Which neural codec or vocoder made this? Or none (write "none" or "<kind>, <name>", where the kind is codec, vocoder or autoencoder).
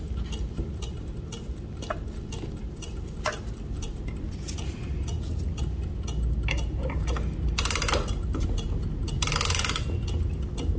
none